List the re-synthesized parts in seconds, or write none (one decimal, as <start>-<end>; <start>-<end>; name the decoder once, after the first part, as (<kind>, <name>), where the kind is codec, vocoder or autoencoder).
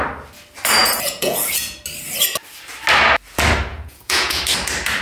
0.8-1.8 (vocoder, Vocos); 3.7-4.4